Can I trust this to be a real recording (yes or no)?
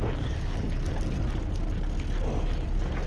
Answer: yes